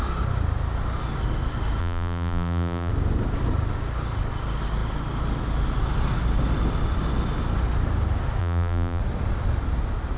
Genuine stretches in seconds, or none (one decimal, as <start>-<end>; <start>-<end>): 0.0-1.8; 2.9-8.4; 9.0-10.2